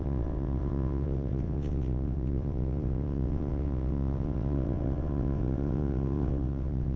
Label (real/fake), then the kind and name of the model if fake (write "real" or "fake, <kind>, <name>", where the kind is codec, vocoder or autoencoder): fake, vocoder, WaveNeXt